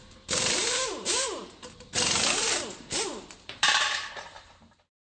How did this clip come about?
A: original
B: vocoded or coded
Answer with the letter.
B